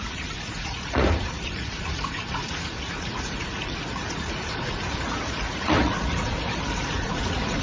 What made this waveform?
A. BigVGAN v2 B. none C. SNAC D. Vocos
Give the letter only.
D